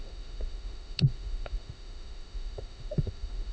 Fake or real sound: fake